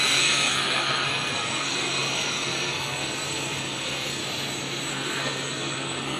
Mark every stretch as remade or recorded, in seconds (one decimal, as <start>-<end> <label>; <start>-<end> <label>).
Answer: 0.0-4.2 remade; 4.2-4.9 recorded; 4.9-6.2 remade

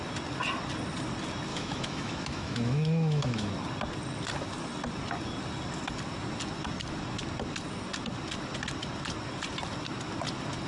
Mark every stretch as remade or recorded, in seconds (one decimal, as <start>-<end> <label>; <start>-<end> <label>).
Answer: 0.0-1.5 recorded; 1.5-3.5 remade; 3.5-10.7 recorded

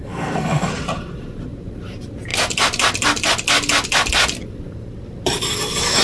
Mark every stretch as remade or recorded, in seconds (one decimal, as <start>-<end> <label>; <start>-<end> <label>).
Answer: 0.0-0.7 remade; 0.7-6.0 recorded

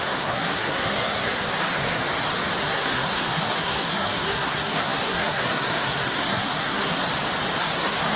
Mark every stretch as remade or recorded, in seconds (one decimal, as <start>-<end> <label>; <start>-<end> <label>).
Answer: 0.0-2.0 remade; 2.0-2.6 recorded; 2.6-7.0 remade; 7.0-7.6 recorded; 7.6-8.2 remade

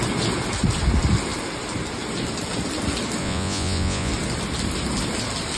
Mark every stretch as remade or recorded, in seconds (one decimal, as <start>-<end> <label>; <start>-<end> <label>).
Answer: 0.0-3.2 recorded; 3.2-4.1 remade; 4.1-5.6 recorded

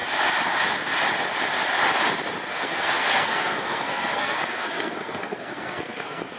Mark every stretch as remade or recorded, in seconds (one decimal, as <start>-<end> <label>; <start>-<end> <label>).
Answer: 0.0-2.5 recorded; 2.5-6.4 remade

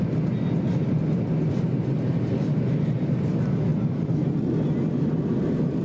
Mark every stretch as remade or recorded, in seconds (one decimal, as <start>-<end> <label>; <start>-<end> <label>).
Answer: 0.0-5.8 recorded